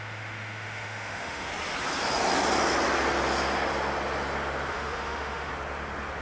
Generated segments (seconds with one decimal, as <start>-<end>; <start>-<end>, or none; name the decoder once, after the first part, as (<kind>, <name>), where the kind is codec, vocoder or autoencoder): 0.0-1.5 (autoencoder, DAC-VAE); 4.7-5.5